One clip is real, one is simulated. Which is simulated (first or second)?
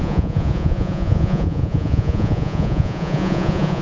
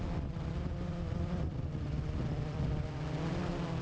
first